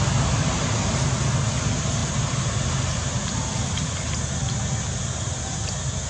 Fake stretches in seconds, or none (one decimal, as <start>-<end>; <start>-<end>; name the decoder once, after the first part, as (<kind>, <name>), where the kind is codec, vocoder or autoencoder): none